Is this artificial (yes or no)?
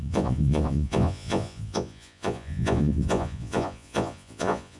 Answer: yes